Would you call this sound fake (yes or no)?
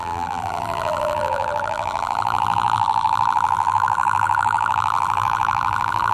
yes